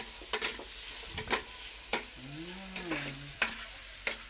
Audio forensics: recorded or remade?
recorded